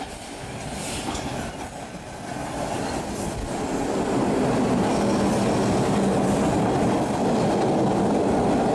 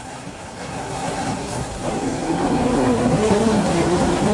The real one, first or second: first